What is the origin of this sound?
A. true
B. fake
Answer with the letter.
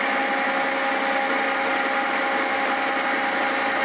A